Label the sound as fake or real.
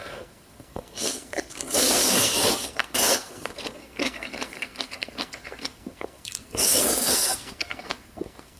fake